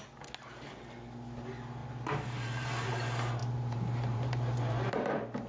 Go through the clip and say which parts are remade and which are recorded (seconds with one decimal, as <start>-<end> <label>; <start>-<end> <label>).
0.0-1.8 recorded; 1.8-2.9 remade; 2.9-3.4 recorded; 3.4-5.1 remade; 5.1-5.5 recorded